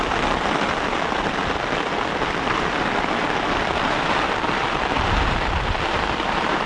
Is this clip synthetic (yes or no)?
yes